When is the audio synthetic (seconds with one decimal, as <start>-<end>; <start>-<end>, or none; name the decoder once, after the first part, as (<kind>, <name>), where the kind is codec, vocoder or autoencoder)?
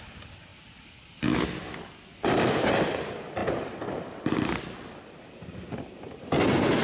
none